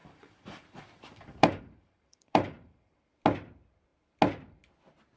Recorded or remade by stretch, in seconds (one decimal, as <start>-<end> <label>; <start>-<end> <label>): 0.0-3.0 remade; 3.0-5.2 recorded